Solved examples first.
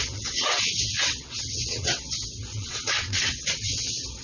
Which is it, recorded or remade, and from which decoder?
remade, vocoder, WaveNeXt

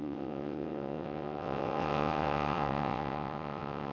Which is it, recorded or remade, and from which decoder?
remade, vocoder, WaveNeXt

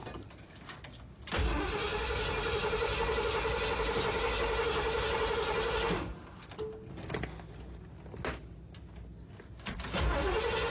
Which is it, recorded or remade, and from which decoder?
recorded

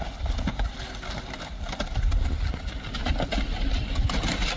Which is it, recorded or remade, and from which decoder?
recorded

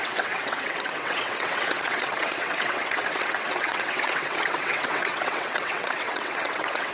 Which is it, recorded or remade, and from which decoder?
remade, vocoder, WaveNeXt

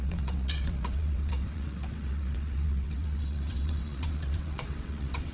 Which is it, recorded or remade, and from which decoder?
remade, vocoder, WaveNeXt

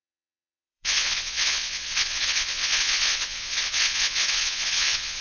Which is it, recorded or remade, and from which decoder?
remade, vocoder, WaveNeXt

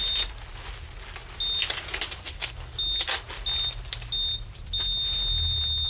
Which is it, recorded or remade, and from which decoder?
recorded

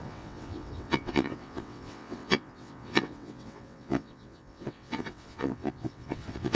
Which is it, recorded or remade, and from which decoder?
remade, vocoder, WaveNeXt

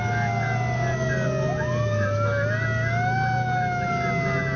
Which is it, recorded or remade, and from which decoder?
recorded